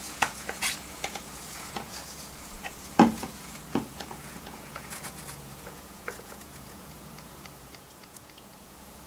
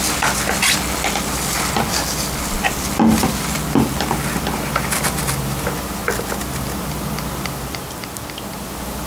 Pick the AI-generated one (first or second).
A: first